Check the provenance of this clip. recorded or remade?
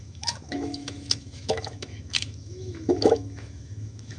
remade